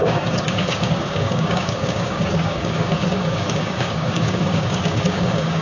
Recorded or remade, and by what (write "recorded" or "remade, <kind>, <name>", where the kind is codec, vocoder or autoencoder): remade, codec, DAC